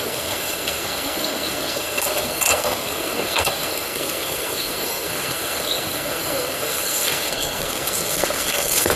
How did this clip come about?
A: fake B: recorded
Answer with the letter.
A